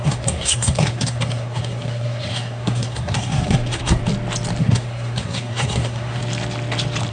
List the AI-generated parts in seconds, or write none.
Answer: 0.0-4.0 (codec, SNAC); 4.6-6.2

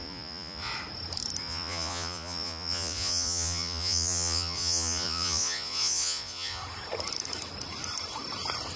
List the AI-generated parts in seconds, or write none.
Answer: 0.0-0.7 (vocoder, Vocos); 1.4-6.6

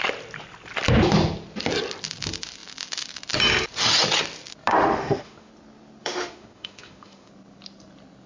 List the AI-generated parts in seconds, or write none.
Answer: 4.7-5.5 (autoencoder, DAC-VAE); 6.0-7.3

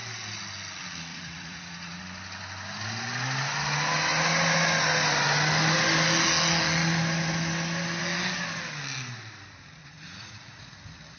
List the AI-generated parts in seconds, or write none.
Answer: 1.1-2.0 (vocoder, Vocos); 9.8-10.7